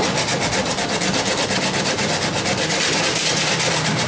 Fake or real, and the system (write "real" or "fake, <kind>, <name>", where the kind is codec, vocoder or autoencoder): real